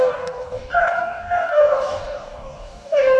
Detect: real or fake fake